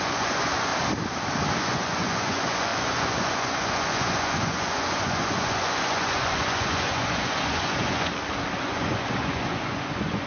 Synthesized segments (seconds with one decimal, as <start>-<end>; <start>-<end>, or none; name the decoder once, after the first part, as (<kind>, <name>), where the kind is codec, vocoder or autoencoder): 0.0-0.7 (vocoder, Vocos); 1.6-8.1; 8.6-10.3